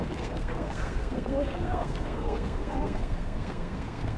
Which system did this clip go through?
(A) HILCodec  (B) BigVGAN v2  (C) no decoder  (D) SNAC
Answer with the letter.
D